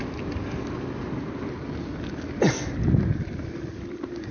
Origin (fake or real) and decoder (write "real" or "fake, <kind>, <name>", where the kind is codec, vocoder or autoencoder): real